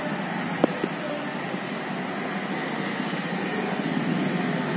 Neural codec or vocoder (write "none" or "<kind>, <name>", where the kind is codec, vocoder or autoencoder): none